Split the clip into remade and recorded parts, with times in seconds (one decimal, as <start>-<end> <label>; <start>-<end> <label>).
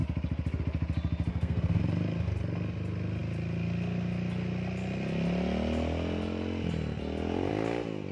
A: 0.0-1.3 recorded; 1.3-1.8 remade; 1.8-8.1 recorded